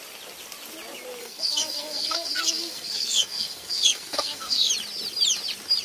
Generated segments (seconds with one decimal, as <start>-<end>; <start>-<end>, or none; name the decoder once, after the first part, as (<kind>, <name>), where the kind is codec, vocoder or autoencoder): 1.2-4.7 (codec, SNAC)